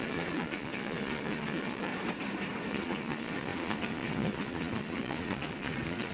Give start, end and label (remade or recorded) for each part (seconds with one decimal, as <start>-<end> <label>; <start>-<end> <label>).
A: 0.0-1.9 remade; 1.9-2.7 recorded; 2.7-6.1 remade